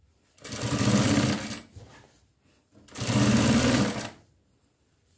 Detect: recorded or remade recorded